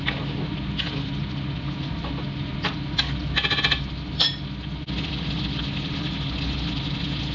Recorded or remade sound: recorded